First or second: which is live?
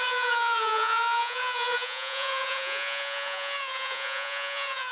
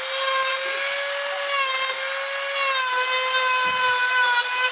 second